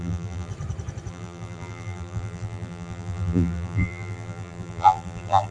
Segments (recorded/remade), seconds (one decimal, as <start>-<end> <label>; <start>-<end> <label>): 0.0-0.5 remade; 0.5-1.1 recorded; 1.1-5.5 remade